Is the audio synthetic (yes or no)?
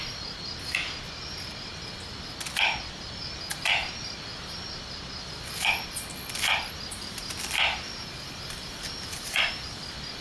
no